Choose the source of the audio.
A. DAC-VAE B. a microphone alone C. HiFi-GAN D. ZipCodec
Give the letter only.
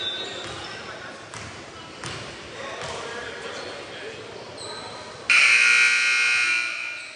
B